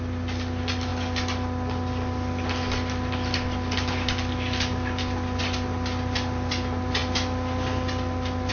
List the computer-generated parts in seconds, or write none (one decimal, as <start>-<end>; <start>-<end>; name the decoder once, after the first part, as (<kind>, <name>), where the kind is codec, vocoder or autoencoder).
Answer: none